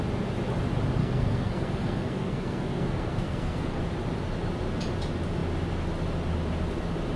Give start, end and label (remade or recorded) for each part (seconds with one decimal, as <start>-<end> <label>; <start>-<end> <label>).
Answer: 0.0-1.0 recorded; 1.0-3.8 remade; 3.8-7.2 recorded